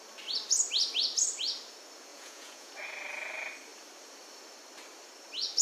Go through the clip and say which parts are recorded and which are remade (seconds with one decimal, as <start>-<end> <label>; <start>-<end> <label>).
0.0-2.1 recorded; 2.1-2.7 remade; 2.7-5.6 recorded

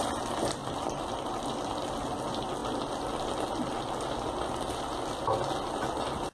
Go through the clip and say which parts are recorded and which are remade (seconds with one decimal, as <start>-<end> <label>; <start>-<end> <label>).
0.0-6.3 recorded

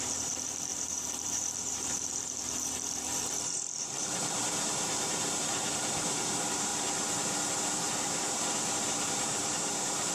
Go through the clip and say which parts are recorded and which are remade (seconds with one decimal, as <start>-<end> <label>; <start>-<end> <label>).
0.0-6.7 remade; 6.7-7.7 recorded; 7.7-10.1 remade

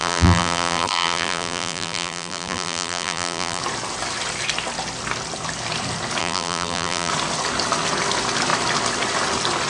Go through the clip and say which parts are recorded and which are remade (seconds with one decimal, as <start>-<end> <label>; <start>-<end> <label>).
0.0-3.6 remade; 3.6-6.2 recorded; 6.2-7.1 remade; 7.1-9.7 recorded

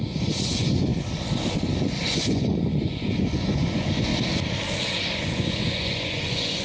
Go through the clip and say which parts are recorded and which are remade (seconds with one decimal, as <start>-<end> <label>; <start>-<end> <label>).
0.0-0.9 remade; 0.9-2.0 recorded; 2.0-4.1 remade; 4.1-4.9 recorded; 4.9-6.6 remade

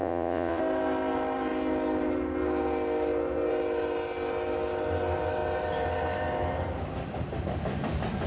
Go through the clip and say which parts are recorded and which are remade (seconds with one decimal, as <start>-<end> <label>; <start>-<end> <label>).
0.0-0.6 remade; 0.6-8.3 recorded